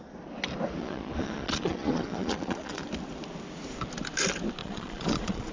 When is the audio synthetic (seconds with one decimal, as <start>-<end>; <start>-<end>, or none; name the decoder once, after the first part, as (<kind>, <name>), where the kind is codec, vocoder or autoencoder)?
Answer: 0.8-2.8 (vocoder, Vocos); 4.6-5.5